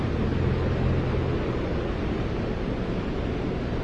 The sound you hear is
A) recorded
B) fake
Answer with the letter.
A